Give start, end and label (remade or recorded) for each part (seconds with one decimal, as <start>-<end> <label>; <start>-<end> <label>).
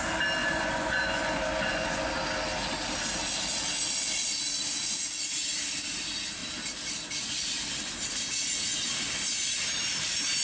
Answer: 0.0-0.4 recorded; 0.4-2.1 remade; 2.1-10.4 recorded